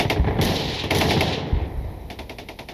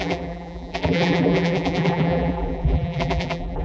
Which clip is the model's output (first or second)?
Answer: second